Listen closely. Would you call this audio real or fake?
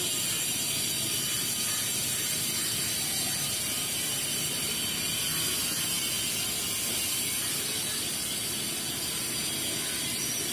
real